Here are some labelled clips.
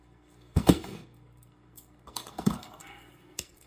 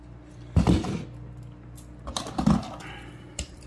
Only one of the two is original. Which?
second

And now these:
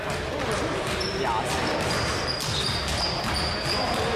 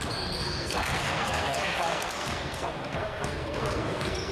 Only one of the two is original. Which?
first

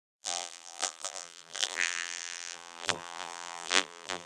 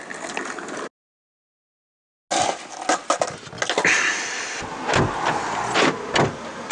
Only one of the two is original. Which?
second